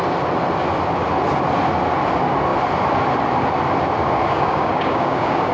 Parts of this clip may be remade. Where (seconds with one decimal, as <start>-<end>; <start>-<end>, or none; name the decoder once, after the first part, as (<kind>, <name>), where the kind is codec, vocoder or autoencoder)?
4.0-5.5 (codec, DAC)